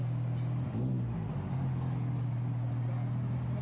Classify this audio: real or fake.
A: real